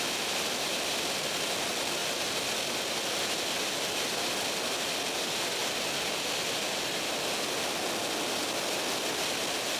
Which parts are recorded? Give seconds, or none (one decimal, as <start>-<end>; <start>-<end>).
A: 0.0-9.8